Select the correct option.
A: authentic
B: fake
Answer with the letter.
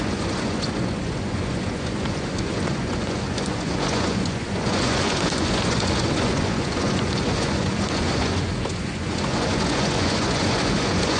B